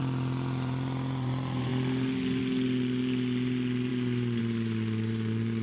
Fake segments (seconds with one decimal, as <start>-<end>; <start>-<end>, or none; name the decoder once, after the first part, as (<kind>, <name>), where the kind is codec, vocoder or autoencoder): none